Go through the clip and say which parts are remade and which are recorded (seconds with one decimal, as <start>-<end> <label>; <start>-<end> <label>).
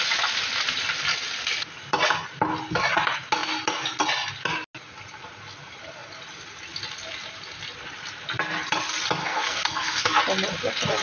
0.0-9.2 recorded; 9.2-10.2 remade; 10.2-11.0 recorded